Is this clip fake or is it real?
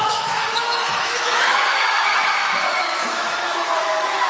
fake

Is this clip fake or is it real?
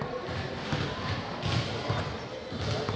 real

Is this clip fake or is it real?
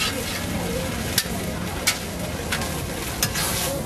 real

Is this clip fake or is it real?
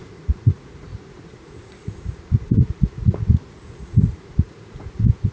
fake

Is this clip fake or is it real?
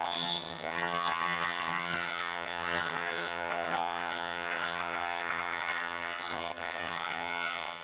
fake